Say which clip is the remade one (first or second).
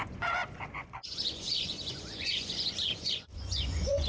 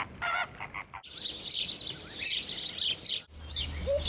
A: first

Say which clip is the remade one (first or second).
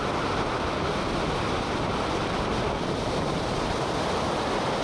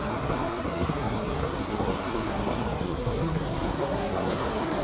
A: second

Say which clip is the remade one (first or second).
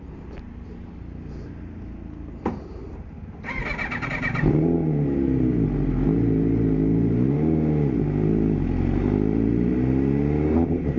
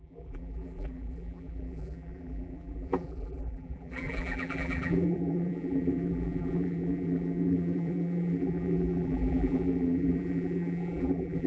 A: second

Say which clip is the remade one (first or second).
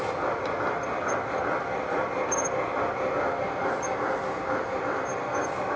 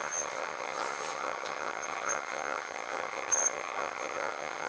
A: second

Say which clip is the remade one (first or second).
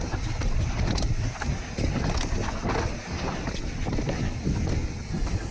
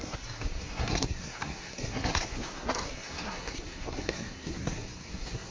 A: second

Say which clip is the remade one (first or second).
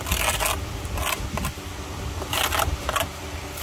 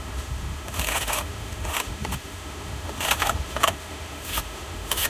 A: second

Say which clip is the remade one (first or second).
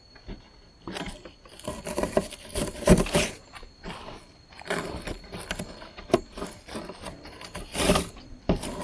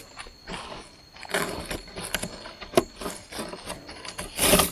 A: first